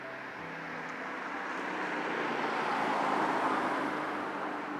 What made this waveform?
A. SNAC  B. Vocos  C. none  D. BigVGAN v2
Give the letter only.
C